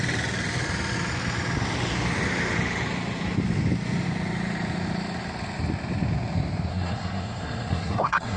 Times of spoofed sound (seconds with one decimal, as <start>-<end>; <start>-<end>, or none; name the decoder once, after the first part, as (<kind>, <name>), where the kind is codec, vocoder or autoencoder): 6.7-8.4 (codec, SNAC)